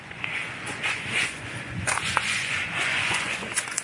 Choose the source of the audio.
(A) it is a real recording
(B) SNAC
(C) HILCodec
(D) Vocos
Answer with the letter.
D